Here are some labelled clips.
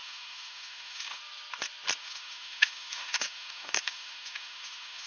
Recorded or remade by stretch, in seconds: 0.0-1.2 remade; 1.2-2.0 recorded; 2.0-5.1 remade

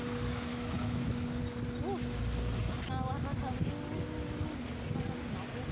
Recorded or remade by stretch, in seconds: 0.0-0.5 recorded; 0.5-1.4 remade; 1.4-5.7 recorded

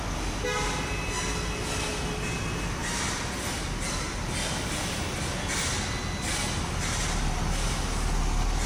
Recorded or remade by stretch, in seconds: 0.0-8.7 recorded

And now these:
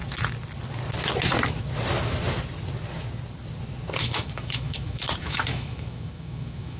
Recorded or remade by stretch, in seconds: 0.0-4.0 recorded; 4.0-6.8 remade